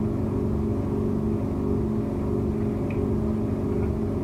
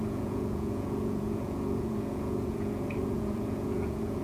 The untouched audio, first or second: first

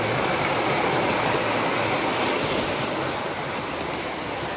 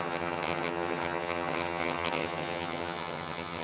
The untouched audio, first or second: first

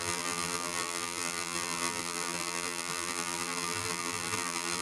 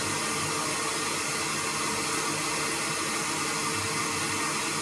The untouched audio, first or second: second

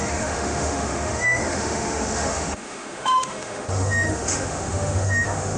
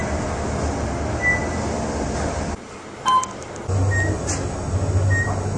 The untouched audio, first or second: second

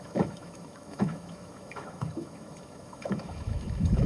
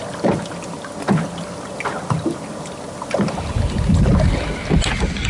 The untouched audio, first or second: second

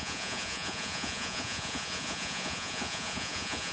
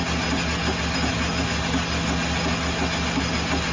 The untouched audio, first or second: second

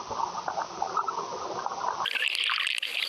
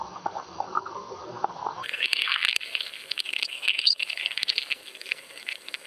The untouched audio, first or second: first